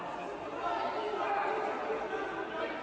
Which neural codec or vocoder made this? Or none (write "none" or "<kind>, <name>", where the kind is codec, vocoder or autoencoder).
none